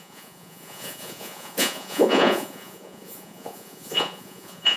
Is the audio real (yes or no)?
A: no